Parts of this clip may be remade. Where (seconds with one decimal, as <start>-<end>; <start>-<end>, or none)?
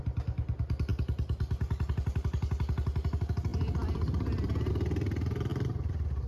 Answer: 3.5-4.7; 5.5-6.3